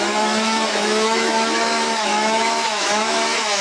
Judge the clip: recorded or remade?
remade